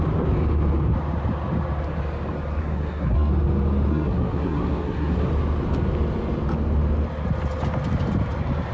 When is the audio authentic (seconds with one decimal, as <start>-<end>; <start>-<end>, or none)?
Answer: 0.0-2.6; 3.3-3.9; 5.3-8.7